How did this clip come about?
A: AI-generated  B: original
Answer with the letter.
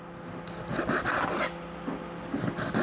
B